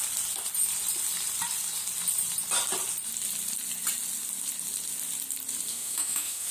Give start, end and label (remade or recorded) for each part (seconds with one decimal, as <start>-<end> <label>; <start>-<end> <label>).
0.0-5.7 recorded; 5.7-6.5 remade